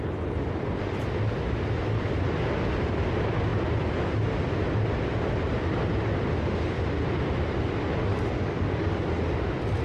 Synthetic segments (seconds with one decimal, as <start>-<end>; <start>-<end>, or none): 8.1-9.0